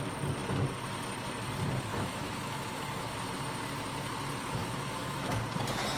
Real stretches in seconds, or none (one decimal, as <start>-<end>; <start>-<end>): 0.0-1.9; 2.6-4.6; 5.4-6.0